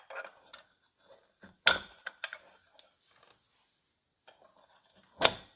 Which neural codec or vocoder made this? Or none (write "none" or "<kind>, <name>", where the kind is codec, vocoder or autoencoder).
none